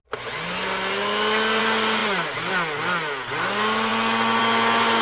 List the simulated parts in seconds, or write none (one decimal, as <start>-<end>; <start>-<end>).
none